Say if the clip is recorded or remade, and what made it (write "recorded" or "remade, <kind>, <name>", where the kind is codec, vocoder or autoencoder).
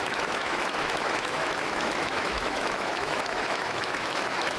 remade, autoencoder, DAC-VAE